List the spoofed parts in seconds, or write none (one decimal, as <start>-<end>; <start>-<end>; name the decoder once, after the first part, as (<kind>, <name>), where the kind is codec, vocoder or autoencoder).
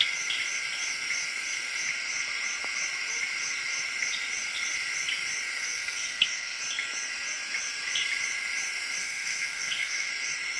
5.6-6.6 (codec, SNAC); 9.0-10.1